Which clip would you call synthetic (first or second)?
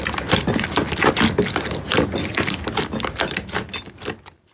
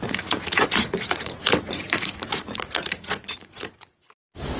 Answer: second